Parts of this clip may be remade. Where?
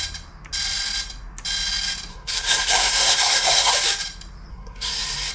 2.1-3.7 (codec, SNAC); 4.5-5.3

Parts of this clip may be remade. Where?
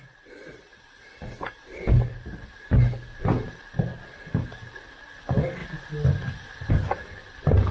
none